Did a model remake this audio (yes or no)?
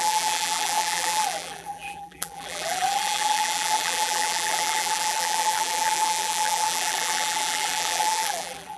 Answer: yes